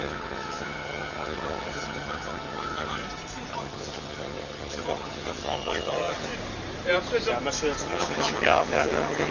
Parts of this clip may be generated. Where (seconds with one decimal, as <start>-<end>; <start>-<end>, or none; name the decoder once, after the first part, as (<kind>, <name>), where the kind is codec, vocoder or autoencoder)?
0.0-3.0 (vocoder, HiFi-GAN); 3.5-6.3; 7.8-9.3

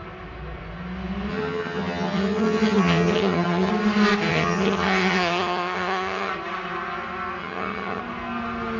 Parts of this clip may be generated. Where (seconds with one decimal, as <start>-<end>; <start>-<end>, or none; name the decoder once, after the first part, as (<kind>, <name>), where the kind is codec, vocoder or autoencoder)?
1.3-3.7 (vocoder, HiFi-GAN); 4.3-6.3; 7.4-8.0

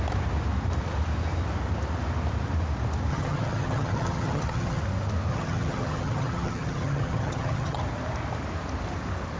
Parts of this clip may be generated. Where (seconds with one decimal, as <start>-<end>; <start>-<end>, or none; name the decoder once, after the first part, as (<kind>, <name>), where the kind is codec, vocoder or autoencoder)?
3.1-4.8 (vocoder, HiFi-GAN); 5.3-7.8

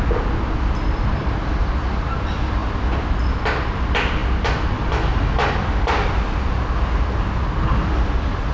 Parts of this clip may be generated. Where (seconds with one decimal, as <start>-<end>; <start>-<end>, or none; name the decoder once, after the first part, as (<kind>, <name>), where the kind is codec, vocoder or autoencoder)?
none

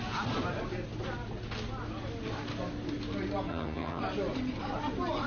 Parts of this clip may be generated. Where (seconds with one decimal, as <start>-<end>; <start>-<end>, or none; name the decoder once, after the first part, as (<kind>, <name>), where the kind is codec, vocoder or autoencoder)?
3.5-4.0 (vocoder, HiFi-GAN)

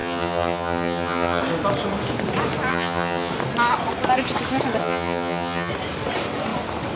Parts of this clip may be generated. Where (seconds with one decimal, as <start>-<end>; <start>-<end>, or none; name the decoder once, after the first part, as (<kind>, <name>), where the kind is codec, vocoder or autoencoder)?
0.0-1.4 (vocoder, HiFi-GAN); 2.7-3.3; 4.8-5.7